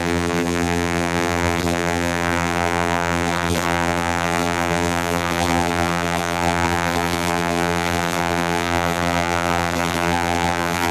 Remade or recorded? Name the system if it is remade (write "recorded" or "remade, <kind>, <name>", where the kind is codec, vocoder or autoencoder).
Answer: remade, vocoder, BigVGAN v2